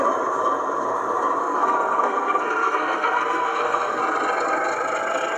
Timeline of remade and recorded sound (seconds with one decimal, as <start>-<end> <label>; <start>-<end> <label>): 0.0-1.4 recorded; 1.4-4.0 remade; 4.0-5.4 recorded